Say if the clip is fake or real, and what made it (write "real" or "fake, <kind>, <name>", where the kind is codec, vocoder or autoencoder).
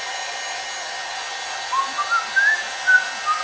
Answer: real